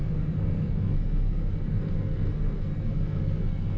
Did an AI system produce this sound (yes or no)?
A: yes